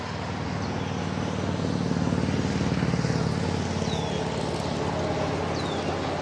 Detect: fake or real real